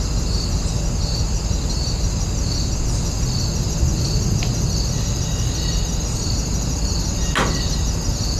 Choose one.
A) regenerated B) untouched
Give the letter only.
B